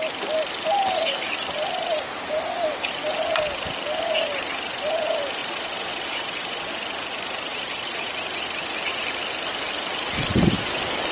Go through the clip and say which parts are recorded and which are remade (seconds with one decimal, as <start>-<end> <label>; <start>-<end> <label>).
0.0-5.4 recorded; 5.4-6.7 remade; 6.7-7.5 recorded; 7.5-8.1 remade; 8.1-11.1 recorded